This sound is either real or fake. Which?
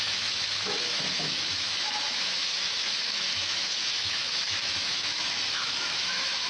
fake